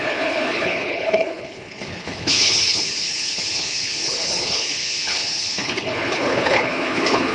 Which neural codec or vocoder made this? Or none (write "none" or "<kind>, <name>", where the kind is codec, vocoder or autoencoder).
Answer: codec, HILCodec